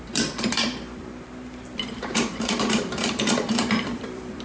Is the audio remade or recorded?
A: remade